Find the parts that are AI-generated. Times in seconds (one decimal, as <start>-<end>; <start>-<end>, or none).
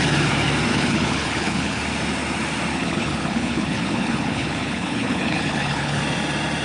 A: 0.7-1.8; 2.7-6.0